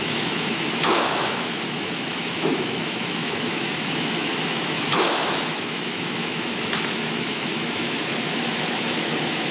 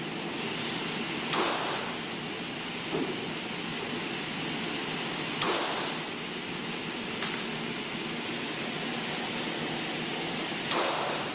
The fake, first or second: first